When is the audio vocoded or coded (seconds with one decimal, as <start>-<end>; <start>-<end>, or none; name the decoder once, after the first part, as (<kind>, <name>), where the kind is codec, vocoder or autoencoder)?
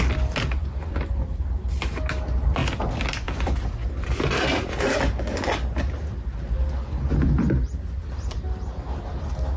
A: none